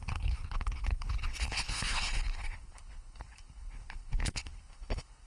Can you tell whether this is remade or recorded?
remade